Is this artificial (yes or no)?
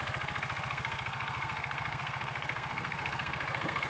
yes